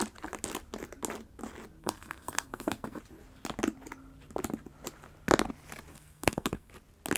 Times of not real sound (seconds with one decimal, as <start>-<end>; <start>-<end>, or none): 1.8-3.0; 5.9-6.7